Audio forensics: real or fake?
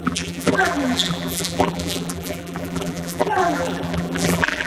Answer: fake